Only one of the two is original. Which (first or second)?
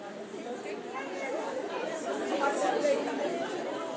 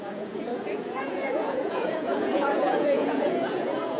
first